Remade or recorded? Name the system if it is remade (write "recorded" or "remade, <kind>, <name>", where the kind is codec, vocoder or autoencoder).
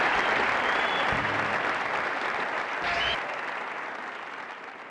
recorded